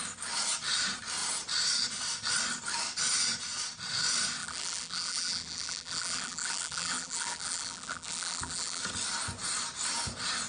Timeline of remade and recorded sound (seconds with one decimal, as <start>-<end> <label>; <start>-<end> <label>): 0.0-4.4 recorded; 4.4-8.8 remade; 8.8-10.5 recorded